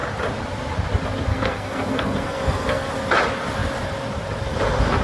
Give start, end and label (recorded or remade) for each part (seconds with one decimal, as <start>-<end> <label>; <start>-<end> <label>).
0.0-1.3 recorded; 1.3-2.9 remade; 2.9-5.0 recorded